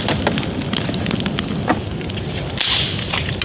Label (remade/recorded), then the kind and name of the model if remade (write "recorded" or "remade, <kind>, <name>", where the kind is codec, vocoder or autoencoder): recorded